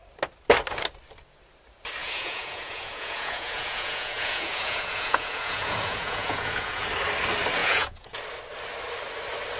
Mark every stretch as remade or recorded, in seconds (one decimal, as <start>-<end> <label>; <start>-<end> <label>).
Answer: 0.0-2.0 recorded; 2.0-6.9 remade; 6.9-7.6 recorded; 7.6-8.2 remade; 8.2-9.6 recorded